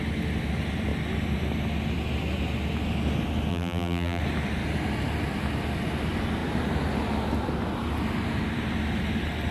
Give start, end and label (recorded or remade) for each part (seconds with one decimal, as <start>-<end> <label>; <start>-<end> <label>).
0.0-3.5 recorded; 3.5-4.2 remade; 4.2-9.5 recorded